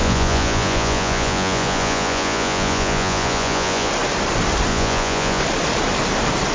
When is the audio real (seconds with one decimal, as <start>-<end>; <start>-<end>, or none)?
3.9-4.7; 5.4-6.5